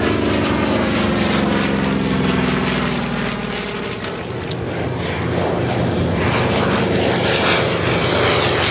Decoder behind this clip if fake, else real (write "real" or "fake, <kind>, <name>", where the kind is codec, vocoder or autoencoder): real